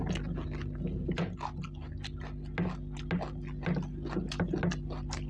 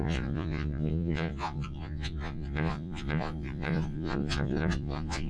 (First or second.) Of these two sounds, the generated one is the second